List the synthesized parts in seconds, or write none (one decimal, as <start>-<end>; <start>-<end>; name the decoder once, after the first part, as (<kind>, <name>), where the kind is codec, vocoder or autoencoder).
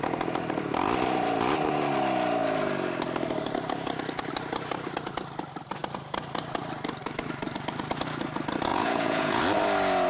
8.7-9.4 (vocoder, Vocos)